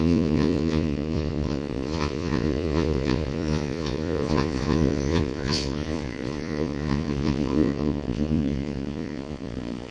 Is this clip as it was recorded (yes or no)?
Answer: no